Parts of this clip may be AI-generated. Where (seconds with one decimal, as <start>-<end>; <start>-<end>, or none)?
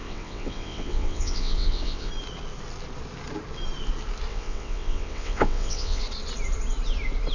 0.0-2.1; 4.3-6.0